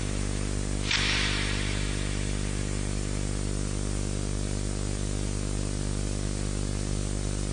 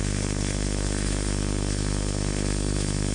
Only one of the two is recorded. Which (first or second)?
first